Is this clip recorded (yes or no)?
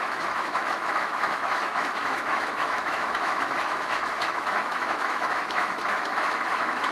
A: no